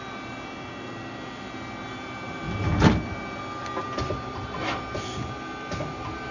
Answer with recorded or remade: recorded